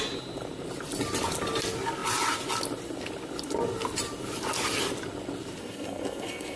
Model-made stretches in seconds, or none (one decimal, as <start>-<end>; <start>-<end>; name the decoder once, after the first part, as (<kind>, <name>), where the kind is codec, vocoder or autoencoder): 5.6-6.6 (codec, SNAC)